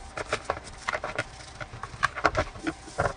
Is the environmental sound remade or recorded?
remade